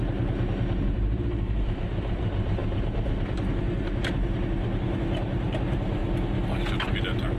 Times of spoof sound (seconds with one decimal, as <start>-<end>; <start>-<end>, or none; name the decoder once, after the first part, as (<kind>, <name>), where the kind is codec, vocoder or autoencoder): 0.8-6.0 (vocoder, BigVGAN v2)